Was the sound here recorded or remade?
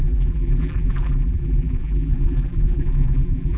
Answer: remade